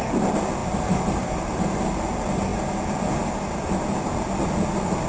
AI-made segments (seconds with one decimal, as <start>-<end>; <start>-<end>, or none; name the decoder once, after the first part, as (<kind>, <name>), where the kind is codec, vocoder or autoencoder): 0.6-1.9 (vocoder, BigVGAN v2)